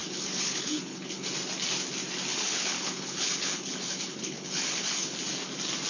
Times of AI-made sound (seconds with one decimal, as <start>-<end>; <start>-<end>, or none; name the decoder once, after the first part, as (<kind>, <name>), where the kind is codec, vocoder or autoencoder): 0.0-1.3 (codec, HILCodec); 2.3-5.1